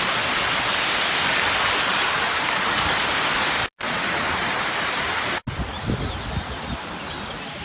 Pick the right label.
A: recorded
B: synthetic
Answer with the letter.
A